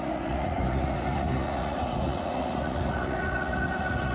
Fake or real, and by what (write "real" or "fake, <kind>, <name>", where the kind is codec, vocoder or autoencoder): fake, vocoder, Vocos